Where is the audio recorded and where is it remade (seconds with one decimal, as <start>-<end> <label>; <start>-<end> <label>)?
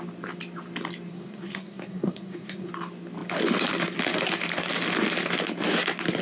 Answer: 0.0-1.1 recorded; 1.1-2.7 remade; 2.7-6.2 recorded